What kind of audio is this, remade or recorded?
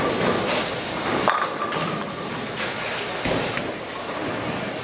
recorded